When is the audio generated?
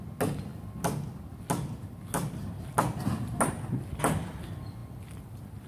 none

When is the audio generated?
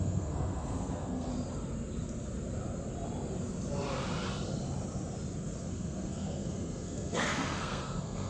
0.0-1.3 (codec, SNAC); 5.6-8.3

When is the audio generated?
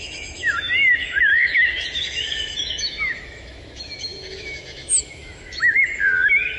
0.0-6.6 (autoencoder, DAC-VAE)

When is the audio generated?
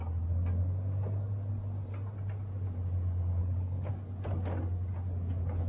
3.4-3.9 (codec, HILCodec)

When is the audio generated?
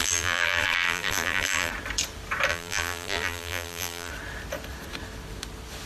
0.0-1.7 (vocoder, BigVGAN v2); 2.5-4.1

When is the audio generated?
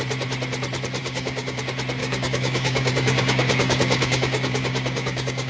1.0-1.6 (codec, DAC); 2.0-5.5